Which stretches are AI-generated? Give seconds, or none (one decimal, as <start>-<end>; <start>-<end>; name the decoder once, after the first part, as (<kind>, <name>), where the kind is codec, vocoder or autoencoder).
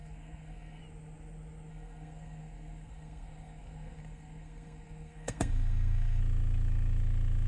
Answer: 0.0-0.8 (codec, SNAC); 1.7-6.2